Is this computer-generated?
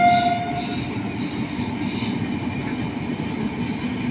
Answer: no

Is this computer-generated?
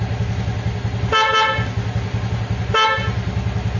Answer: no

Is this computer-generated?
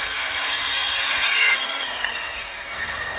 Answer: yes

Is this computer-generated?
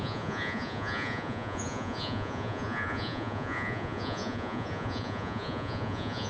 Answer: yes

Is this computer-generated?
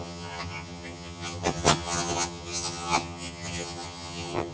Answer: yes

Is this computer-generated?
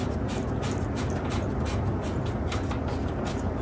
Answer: no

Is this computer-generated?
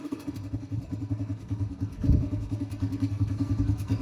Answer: yes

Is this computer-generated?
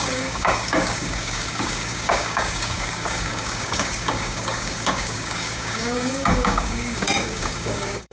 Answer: yes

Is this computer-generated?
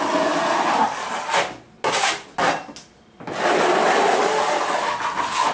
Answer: no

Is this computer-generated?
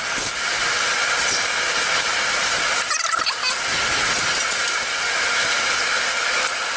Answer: no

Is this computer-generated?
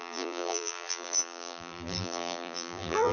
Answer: yes